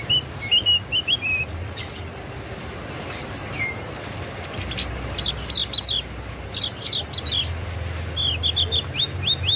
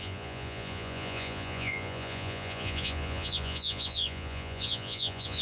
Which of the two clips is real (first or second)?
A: first